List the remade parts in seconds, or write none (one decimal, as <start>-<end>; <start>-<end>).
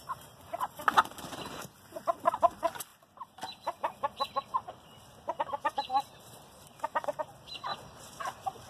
2.9-7.2